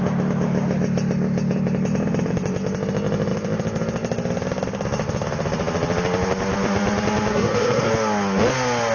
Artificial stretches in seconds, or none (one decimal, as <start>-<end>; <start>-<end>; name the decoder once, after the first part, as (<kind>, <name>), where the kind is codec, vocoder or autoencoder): 7.3-7.9 (codec, SNAC)